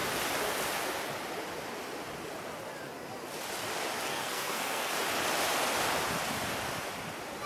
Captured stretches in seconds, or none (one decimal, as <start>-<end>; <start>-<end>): 0.0-4.1; 4.9-7.5